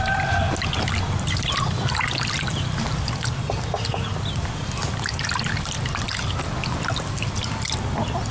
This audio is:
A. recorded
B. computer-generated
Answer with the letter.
A